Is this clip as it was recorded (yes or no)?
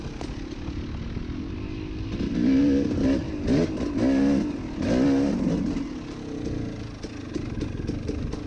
yes